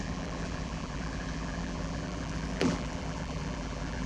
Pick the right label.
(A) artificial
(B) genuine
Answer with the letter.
A